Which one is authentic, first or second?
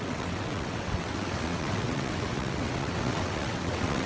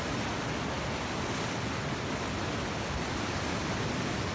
second